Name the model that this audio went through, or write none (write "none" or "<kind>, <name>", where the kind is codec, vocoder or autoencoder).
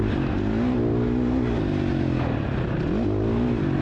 none